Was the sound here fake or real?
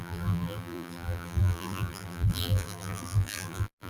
fake